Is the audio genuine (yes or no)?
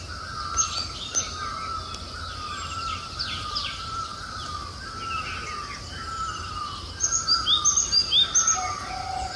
yes